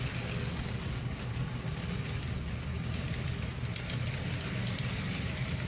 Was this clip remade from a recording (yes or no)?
no